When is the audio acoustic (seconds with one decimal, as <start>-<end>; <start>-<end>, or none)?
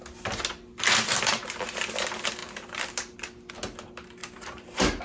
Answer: 0.0-4.2